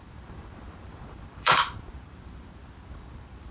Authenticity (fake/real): fake